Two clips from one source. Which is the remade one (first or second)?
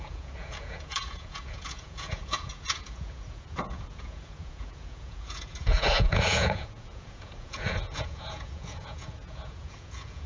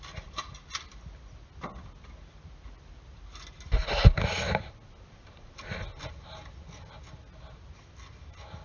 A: first